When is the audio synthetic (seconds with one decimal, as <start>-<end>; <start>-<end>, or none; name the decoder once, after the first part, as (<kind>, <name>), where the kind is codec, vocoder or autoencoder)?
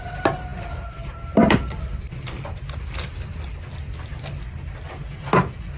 0.5-3.5 (vocoder, BigVGAN v2)